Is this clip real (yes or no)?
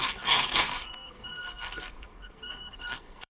no